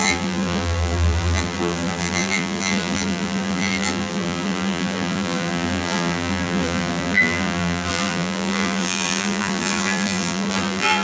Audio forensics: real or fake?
fake